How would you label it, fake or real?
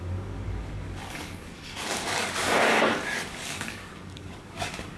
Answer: fake